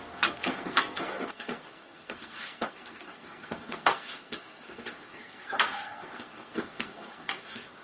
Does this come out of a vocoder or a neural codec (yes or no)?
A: yes